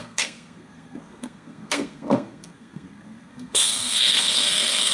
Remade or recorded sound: remade